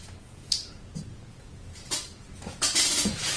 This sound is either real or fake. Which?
fake